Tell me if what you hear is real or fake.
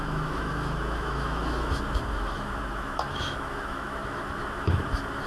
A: fake